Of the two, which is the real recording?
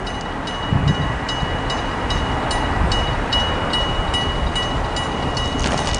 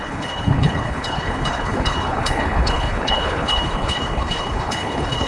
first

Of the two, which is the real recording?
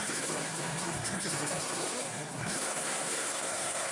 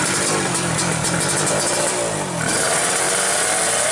second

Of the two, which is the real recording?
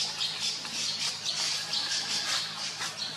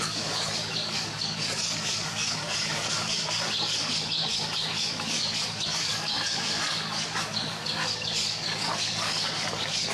first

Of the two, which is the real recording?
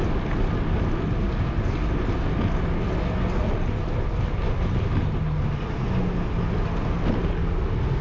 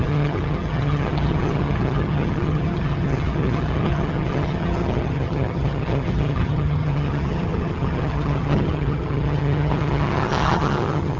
first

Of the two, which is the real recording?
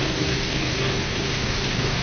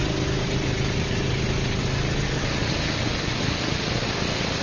second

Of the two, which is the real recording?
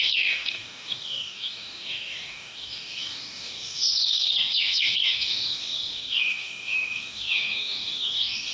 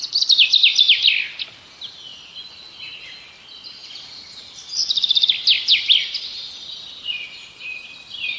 second